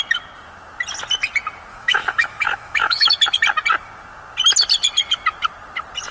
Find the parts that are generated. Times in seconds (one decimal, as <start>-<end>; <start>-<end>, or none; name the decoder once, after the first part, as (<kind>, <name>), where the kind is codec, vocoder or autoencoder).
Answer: 1.7-3.1 (autoencoder, DAC-VAE)